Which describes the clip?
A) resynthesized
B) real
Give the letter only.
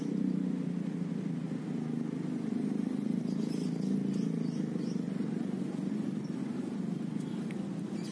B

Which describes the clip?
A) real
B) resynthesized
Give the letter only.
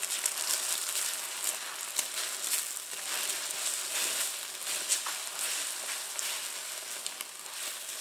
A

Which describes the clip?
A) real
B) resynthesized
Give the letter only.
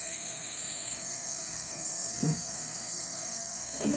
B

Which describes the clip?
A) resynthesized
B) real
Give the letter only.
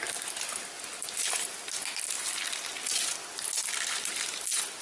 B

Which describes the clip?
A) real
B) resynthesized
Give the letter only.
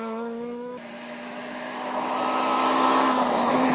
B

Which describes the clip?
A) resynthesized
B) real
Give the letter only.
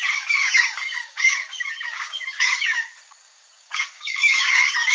A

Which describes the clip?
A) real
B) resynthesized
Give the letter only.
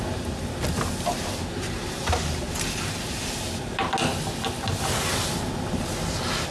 A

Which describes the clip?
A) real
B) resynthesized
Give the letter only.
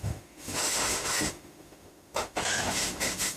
B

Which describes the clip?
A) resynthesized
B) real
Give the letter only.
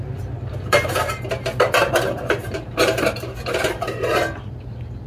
A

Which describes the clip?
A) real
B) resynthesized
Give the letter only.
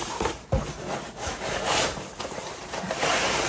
B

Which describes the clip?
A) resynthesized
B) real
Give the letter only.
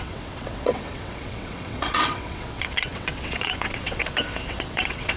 A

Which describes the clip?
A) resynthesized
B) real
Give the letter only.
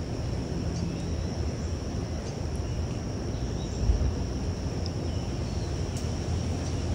B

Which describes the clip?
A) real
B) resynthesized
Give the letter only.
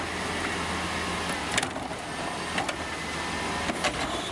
A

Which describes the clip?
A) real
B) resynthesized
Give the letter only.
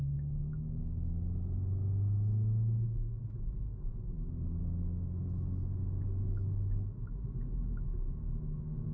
B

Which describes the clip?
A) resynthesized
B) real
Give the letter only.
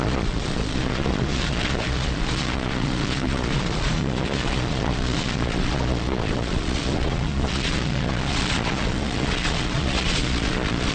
A